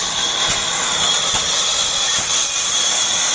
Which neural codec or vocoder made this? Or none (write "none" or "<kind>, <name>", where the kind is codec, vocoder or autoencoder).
none